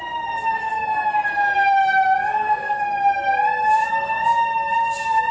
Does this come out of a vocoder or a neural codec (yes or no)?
no